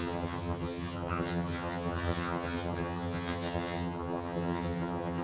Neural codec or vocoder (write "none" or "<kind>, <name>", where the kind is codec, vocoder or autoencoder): vocoder, HiFi-GAN